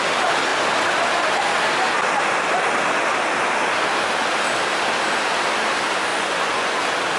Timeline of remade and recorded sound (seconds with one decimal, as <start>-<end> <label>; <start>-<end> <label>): 0.0-6.1 recorded; 6.1-6.8 remade; 6.8-7.2 recorded